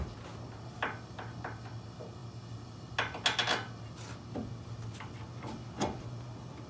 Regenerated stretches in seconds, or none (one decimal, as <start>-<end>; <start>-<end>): none